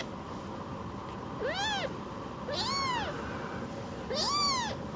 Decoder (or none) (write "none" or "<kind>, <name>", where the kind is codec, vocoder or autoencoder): none